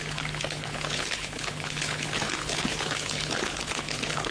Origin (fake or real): fake